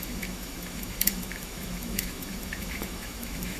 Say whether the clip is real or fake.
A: fake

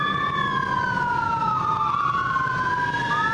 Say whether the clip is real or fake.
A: real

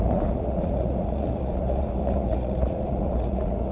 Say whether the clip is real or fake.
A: fake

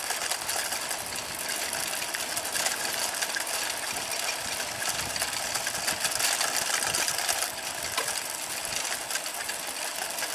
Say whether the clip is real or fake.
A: real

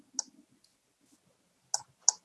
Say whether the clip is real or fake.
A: real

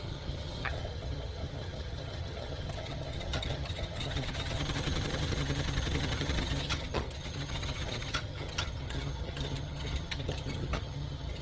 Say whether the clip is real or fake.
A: fake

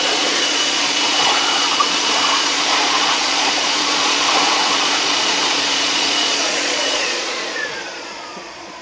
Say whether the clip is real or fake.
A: fake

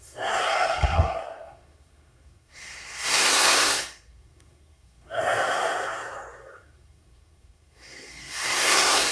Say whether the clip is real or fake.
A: fake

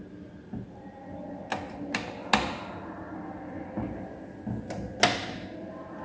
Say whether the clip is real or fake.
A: real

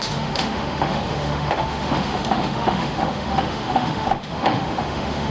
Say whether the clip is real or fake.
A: fake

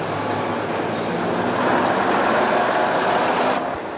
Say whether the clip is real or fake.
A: real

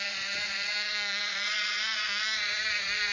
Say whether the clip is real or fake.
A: fake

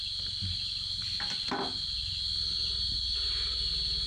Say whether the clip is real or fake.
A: real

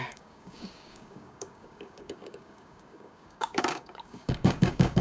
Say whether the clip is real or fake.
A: fake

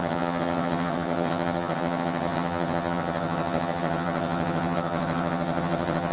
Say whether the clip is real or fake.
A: fake